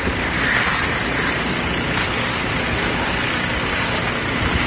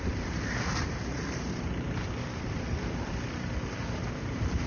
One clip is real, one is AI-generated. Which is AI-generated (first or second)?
second